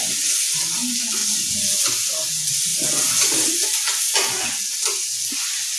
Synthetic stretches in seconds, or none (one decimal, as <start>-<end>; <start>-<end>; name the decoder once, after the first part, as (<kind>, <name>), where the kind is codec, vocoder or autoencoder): none